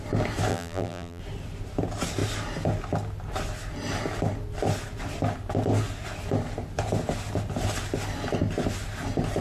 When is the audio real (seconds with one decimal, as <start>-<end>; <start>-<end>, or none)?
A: 0.0-0.5; 1.2-9.4